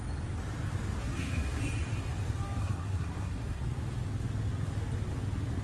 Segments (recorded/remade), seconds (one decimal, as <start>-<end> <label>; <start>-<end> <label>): 0.0-1.0 recorded; 1.0-1.6 remade; 1.6-2.6 recorded; 2.6-3.6 remade; 3.6-5.6 recorded